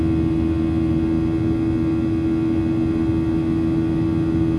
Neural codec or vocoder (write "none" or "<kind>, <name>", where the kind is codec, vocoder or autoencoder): none